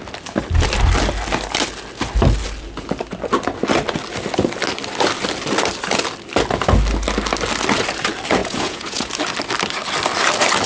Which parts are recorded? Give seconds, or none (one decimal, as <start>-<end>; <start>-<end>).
0.0-8.4; 9.1-10.7

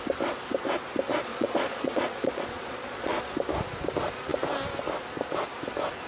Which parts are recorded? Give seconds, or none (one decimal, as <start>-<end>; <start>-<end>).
0.0-1.3; 3.3-6.1

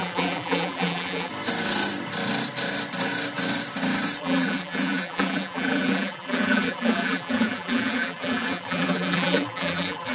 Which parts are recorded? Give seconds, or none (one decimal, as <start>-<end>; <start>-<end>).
1.3-4.2

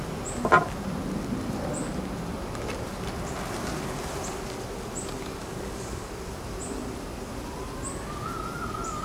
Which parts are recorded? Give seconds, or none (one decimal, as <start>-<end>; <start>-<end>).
0.0-5.4; 6.1-9.0

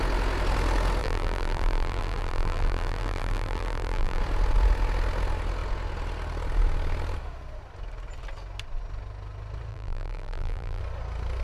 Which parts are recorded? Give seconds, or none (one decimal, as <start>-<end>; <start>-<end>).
0.0-1.0; 4.2-9.7; 10.8-11.4